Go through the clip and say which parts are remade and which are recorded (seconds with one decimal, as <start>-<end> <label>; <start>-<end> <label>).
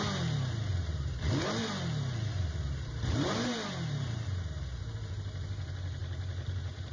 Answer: 0.0-0.7 recorded; 0.7-1.2 remade; 1.2-2.3 recorded; 2.3-4.4 remade; 4.4-6.9 recorded